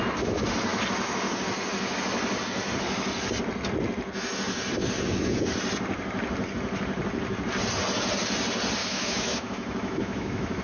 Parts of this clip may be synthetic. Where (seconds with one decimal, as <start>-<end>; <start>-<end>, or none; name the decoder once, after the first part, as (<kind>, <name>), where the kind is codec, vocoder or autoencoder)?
8.8-10.6 (autoencoder, DAC-VAE)